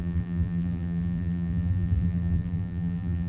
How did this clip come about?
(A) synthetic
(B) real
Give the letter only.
A